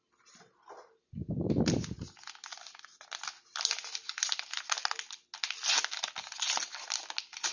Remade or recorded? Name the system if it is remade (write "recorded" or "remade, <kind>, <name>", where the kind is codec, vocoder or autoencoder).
recorded